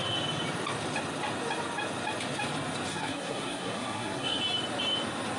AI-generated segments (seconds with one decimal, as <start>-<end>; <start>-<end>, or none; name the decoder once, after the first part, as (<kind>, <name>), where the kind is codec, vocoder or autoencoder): 2.9-4.4 (codec, SNAC)